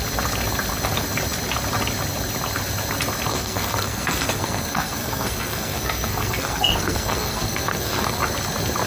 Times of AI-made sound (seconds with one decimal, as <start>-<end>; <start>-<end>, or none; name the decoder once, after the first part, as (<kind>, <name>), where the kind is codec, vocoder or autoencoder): 3.3-8.2 (codec, SNAC)